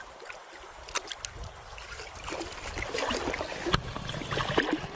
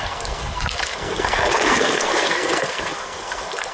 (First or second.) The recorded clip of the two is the first